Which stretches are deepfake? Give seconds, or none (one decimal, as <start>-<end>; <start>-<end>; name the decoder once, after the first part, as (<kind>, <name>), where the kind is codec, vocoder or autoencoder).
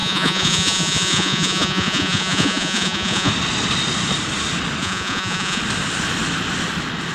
0.0-3.3 (vocoder, Vocos); 4.8-5.6